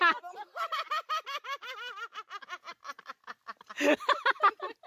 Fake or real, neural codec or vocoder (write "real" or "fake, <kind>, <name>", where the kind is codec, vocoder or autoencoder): real